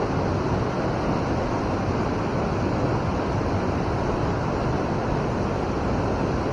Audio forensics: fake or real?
real